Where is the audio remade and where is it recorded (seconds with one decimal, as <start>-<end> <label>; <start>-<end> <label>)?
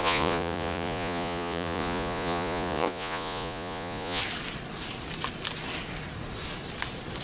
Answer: 0.0-4.2 remade; 4.2-7.2 recorded